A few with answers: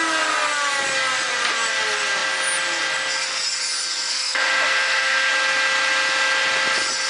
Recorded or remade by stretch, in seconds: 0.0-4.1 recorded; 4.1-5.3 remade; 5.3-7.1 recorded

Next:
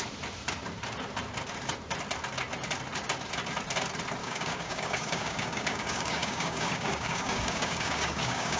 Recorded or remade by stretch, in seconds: 0.0-4.2 recorded; 4.2-8.6 remade

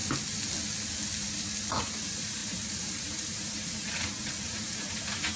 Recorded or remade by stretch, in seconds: 0.0-1.8 recorded; 1.8-5.4 remade